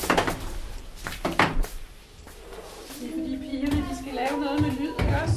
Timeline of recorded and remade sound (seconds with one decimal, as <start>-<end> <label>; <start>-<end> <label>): 0.0-5.4 recorded